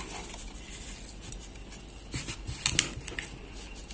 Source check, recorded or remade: recorded